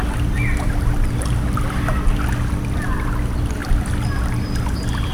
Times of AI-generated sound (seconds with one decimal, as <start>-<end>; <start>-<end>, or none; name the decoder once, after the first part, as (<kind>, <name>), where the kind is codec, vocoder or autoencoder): 3.6-5.1 (vocoder, BigVGAN v2)

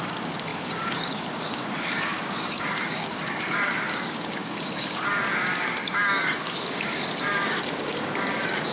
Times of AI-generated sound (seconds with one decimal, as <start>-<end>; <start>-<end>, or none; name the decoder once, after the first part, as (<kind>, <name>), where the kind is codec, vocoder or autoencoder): 0.0-8.7 (codec, DAC)